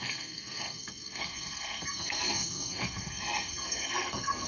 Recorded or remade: remade